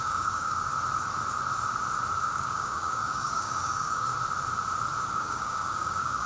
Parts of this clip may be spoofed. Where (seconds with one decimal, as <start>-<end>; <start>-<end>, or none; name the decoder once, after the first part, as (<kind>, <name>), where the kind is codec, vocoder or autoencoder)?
0.0-0.7 (codec, DAC); 2.2-4.1; 5.1-6.3